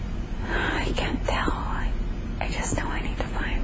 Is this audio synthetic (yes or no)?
no